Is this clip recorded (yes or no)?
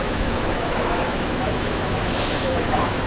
no